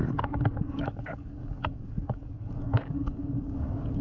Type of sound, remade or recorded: remade